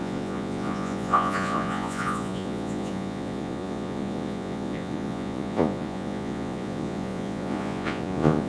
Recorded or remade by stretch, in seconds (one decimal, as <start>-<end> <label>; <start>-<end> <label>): 0.0-8.5 remade